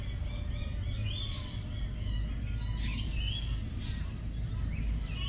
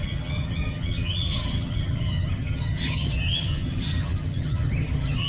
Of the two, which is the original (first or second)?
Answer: first